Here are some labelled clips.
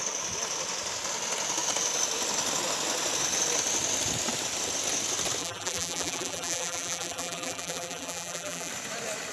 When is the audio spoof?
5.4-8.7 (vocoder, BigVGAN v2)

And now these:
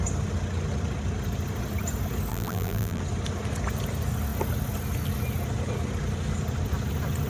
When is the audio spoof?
2.3-3.0 (vocoder, BigVGAN v2)

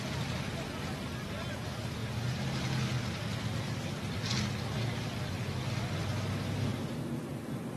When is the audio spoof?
6.7-7.3 (vocoder, BigVGAN v2)

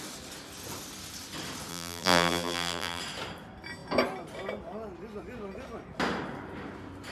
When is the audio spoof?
1.7-3.0 (vocoder, BigVGAN v2)